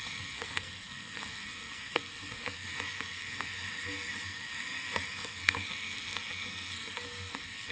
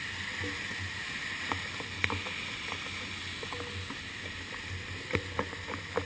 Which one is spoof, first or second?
first